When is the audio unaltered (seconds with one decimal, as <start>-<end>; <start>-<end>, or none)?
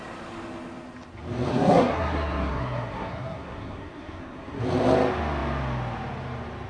0.0-1.5; 4.6-6.7